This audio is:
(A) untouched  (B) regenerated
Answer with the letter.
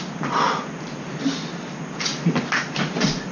A